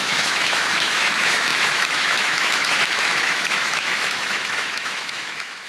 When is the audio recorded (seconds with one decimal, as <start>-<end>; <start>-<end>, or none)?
none